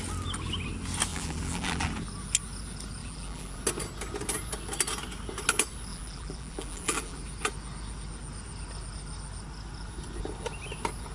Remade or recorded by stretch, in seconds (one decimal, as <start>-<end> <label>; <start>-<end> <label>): 0.0-1.1 recorded; 1.1-1.9 remade; 1.9-3.0 recorded; 3.0-3.6 remade; 3.6-5.9 recorded; 5.9-7.2 remade; 7.2-11.1 recorded